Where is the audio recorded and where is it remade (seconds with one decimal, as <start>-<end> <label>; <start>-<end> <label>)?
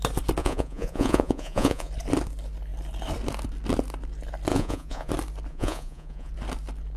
0.0-0.4 recorded; 0.4-1.9 remade; 1.9-4.5 recorded; 4.5-5.1 remade; 5.1-5.5 recorded; 5.5-6.3 remade; 6.3-7.0 recorded